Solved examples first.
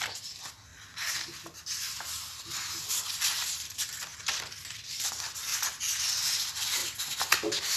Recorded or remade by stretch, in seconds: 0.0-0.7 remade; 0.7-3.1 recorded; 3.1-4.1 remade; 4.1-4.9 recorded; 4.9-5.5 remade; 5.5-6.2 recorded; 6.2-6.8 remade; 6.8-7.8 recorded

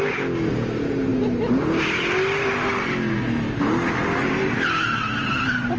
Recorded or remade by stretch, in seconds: 0.0-4.2 recorded; 4.2-5.8 remade

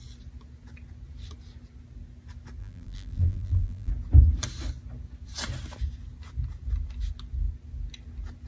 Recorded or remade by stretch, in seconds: 0.0-2.6 recorded; 2.6-3.9 remade; 3.9-8.5 recorded

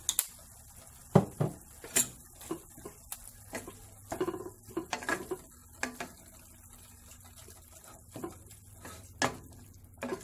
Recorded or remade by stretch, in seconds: 0.0-10.2 recorded

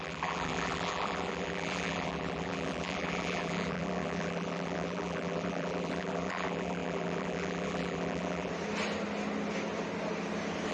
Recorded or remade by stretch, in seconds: 0.0-8.5 remade; 8.5-10.7 recorded

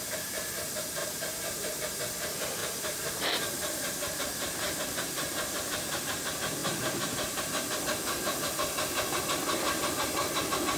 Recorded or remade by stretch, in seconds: 0.0-1.0 recorded; 1.0-2.0 remade; 2.0-2.6 recorded; 2.6-6.0 remade; 6.0-6.6 recorded; 6.6-7.4 remade; 7.4-10.8 recorded

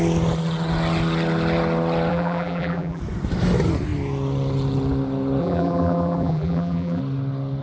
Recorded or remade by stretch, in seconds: 0.0-2.1 recorded; 2.1-3.0 remade; 3.0-5.4 recorded; 5.4-7.0 remade; 7.0-7.6 recorded